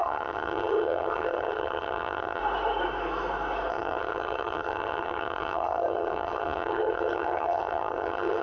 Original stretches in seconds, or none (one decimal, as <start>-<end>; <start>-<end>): 2.4-3.7

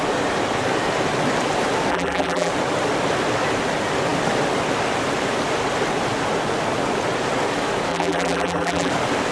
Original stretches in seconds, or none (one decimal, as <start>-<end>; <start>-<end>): 0.0-1.9; 2.5-7.9; 8.9-9.3

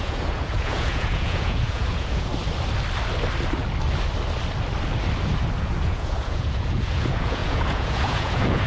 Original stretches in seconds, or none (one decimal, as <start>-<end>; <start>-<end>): 2.3-5.6

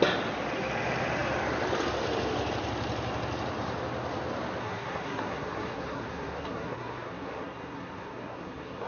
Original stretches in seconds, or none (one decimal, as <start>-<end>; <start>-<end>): 0.0-4.6